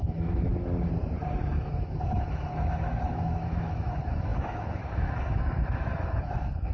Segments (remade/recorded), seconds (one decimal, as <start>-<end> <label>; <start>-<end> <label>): 0.0-0.5 remade; 0.5-1.5 recorded; 1.5-6.7 remade